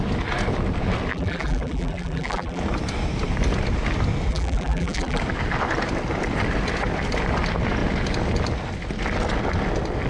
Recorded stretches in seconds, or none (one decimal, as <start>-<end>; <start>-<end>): 0.0-1.1; 2.6-4.3; 5.2-10.1